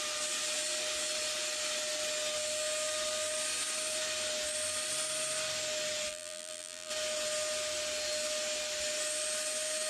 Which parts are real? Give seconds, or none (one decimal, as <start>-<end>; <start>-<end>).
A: 0.0-6.1; 6.9-9.9

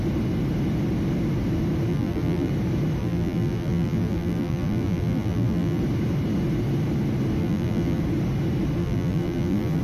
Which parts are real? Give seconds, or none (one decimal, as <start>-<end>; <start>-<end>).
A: 0.0-1.9; 2.5-3.0; 5.8-7.4; 8.0-8.8

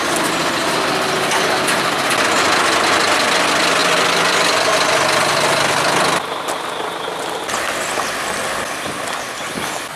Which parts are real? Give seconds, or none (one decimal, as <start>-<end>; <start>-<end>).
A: 0.0-10.0

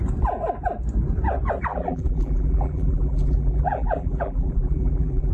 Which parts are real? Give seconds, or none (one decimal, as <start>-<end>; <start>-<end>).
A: 0.0-1.7